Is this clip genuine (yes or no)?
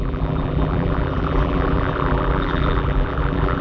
no